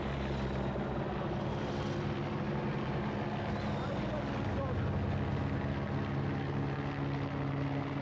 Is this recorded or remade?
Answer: recorded